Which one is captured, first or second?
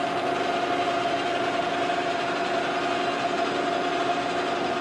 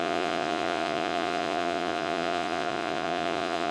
first